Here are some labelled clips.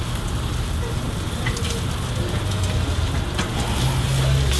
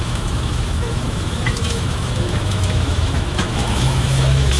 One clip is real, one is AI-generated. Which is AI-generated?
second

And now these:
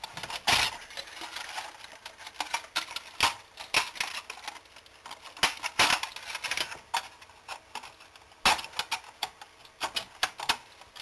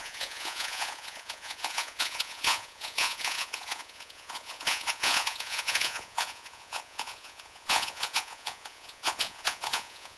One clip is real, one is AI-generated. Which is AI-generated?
second